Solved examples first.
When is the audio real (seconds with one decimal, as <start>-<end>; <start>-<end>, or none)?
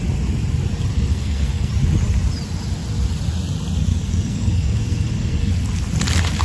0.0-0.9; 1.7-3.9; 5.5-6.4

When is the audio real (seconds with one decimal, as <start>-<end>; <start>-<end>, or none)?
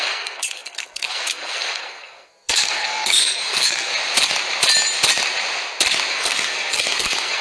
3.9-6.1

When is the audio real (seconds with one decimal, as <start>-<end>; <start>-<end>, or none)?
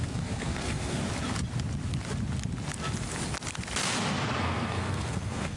1.0-4.4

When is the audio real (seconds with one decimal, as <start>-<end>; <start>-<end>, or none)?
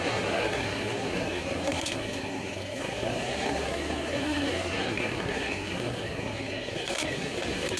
none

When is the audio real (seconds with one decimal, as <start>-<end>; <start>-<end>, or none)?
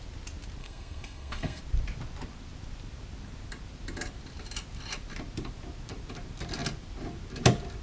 0.0-0.6; 1.6-7.8